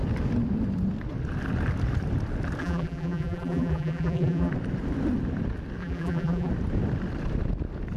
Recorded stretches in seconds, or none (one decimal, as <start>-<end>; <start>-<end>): 0.0-2.6; 4.5-5.8; 6.5-8.0